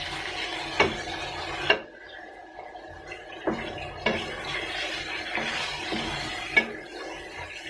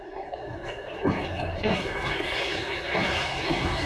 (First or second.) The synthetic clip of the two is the second